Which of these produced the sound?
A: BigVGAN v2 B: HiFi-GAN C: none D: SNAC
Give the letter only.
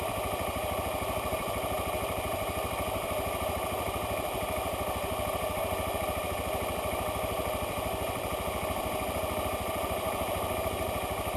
A